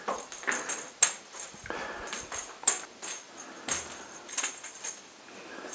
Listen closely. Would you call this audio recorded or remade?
recorded